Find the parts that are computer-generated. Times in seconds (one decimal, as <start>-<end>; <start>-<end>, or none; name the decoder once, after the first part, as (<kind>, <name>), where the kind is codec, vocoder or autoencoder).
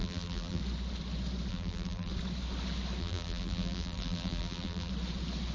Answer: 0.0-0.6 (vocoder, BigVGAN v2); 1.5-2.1; 3.0-4.9